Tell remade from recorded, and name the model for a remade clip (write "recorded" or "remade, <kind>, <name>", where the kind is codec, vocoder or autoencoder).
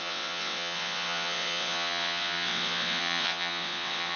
remade, vocoder, WaveNeXt